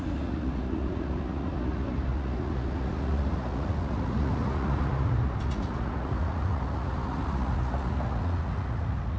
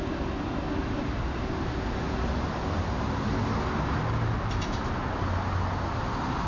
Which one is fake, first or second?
first